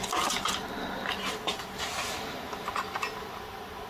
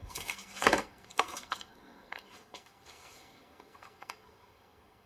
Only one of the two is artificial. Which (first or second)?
second